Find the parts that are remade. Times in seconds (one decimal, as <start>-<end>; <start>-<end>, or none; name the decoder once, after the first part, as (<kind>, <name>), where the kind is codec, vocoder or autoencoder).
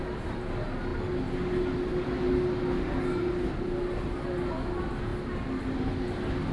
none